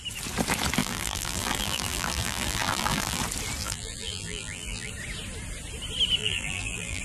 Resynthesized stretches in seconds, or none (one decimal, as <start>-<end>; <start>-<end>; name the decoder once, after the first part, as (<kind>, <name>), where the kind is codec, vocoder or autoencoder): 0.8-3.2 (vocoder, BigVGAN v2); 3.6-4.9; 6.2-7.0